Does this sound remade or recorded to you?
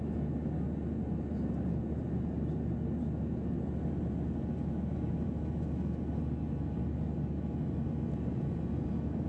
recorded